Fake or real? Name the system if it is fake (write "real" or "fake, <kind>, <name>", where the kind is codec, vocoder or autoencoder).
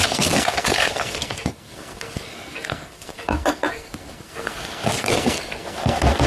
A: fake, codec, SNAC